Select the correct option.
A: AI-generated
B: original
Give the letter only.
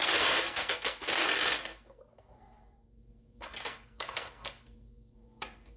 A